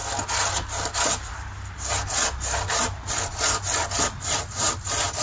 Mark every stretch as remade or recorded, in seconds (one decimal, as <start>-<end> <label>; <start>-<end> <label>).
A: 0.0-5.2 recorded